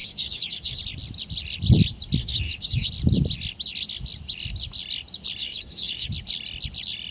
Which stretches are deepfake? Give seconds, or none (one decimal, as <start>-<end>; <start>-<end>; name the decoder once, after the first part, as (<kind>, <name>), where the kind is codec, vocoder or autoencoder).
0.0-0.8 (codec, DAC); 2.2-2.9; 5.4-6.1